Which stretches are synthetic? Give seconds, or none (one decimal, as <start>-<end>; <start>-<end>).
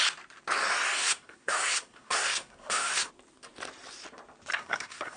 1.0-3.1; 4.5-5.2